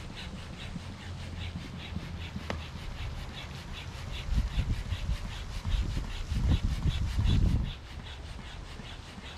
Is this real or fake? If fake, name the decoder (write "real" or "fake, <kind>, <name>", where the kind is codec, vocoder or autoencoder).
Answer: real